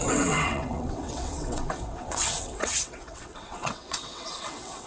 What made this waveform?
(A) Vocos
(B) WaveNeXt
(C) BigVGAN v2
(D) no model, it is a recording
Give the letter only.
B